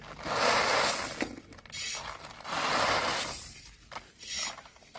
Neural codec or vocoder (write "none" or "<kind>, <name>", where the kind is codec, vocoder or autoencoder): none